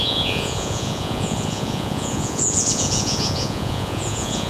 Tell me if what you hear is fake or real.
fake